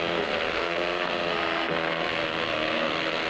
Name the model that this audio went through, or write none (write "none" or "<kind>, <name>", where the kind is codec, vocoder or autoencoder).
codec, SNAC